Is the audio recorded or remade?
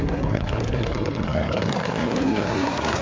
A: remade